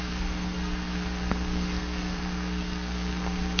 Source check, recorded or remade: remade